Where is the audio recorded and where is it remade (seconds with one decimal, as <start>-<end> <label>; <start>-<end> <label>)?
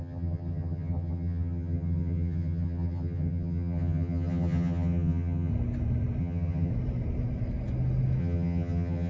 0.0-5.5 remade; 5.5-6.2 recorded; 6.2-6.7 remade; 6.7-8.2 recorded; 8.2-9.1 remade